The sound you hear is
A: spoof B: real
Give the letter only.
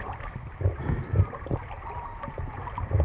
A